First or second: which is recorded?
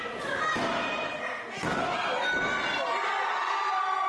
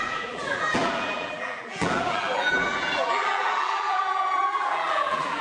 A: first